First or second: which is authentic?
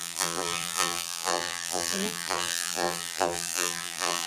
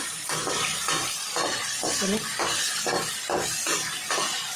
second